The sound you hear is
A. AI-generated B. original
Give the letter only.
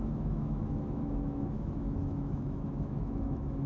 A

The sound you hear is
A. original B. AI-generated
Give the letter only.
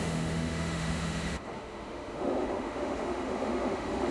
B